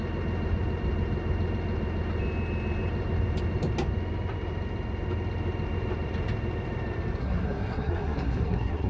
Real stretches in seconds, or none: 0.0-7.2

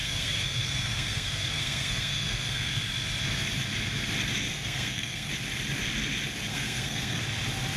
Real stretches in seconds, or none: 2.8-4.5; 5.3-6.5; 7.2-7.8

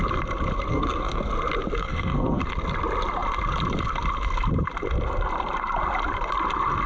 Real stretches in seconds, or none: 0.0-0.7; 1.3-1.8; 2.4-6.9

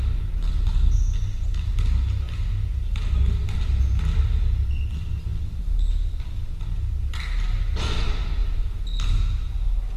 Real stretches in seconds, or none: 0.0-10.0